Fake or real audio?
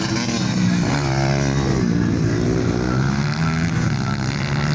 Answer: real